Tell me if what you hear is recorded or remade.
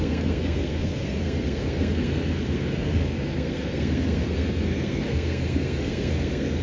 remade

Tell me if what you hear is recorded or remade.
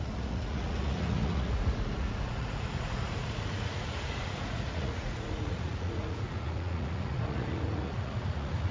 remade